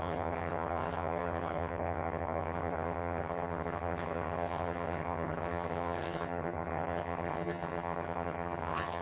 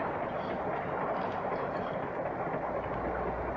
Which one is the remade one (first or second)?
first